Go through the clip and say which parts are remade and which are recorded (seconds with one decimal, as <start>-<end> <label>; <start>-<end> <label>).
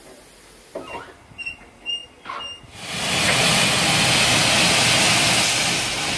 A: 0.0-6.2 recorded